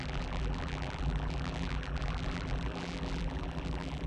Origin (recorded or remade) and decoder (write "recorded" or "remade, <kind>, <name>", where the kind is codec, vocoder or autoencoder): remade, vocoder, BigVGAN v2